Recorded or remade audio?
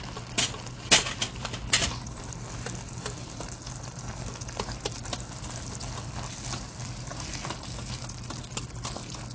recorded